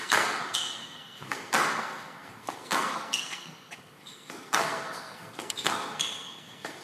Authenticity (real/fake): fake